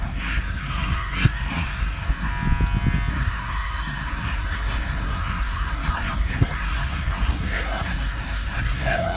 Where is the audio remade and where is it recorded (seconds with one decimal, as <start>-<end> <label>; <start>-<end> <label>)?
0.0-2.3 remade; 2.3-3.1 recorded; 3.1-9.2 remade